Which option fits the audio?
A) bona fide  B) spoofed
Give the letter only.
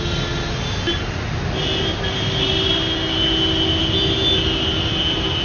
A